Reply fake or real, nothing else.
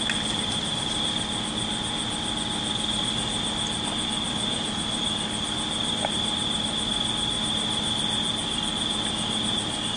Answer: real